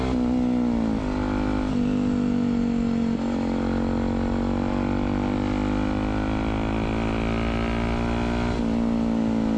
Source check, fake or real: real